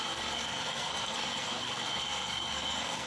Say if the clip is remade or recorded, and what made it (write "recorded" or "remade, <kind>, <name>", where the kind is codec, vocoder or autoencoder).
remade, codec, SNAC